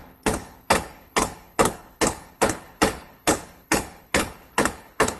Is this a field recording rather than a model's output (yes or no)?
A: no